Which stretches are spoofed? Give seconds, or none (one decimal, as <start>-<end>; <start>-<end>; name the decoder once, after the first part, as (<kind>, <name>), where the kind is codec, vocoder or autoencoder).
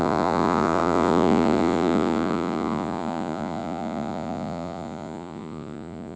0.0-6.2 (vocoder, Vocos)